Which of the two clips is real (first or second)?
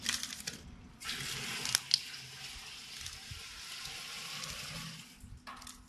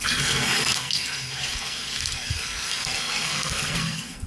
first